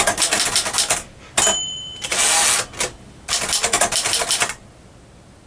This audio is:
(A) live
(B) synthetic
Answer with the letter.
A